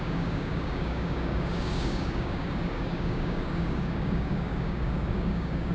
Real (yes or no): no